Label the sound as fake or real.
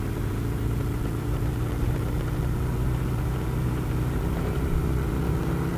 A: fake